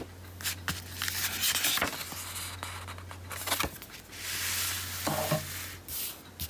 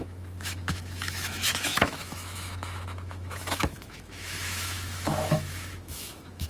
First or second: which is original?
first